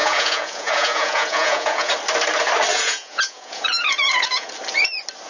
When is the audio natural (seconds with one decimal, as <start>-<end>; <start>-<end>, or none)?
1.9-2.7; 4.5-5.3